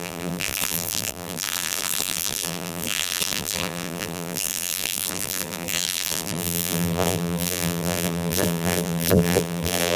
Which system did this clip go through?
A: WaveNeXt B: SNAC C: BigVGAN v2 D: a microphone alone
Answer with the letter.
C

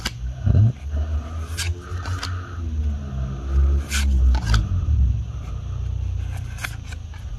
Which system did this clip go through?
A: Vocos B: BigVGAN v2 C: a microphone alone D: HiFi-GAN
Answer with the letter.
C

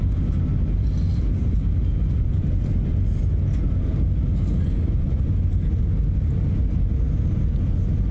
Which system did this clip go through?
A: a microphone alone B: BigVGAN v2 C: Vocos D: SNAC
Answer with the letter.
A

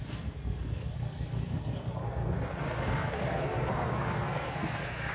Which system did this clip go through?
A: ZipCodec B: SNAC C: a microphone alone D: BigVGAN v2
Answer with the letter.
B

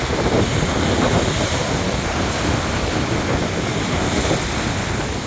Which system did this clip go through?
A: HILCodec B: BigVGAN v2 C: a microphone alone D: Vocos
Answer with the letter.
C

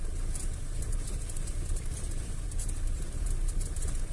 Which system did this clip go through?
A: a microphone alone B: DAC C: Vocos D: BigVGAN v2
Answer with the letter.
D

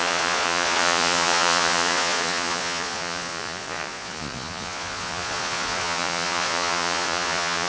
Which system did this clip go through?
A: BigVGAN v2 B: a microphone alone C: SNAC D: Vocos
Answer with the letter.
D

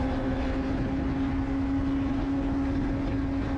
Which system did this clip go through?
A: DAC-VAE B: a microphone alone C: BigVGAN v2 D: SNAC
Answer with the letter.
B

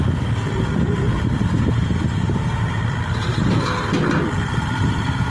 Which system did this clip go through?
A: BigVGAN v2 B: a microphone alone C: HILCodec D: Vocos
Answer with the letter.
B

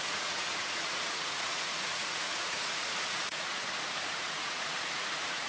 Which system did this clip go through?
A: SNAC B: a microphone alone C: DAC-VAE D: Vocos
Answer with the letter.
D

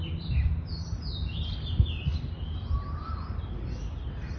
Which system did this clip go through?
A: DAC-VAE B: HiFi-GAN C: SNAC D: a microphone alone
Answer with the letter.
D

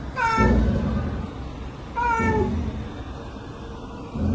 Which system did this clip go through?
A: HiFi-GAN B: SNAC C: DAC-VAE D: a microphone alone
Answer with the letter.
D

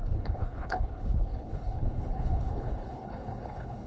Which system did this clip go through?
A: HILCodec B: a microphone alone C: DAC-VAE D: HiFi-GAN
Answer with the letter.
A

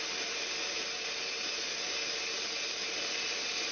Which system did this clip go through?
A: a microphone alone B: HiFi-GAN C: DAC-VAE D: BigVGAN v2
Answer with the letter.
A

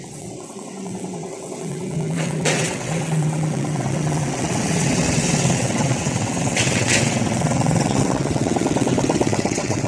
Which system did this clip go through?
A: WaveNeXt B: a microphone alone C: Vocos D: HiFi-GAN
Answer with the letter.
A